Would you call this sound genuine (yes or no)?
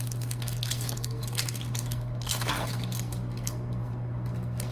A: no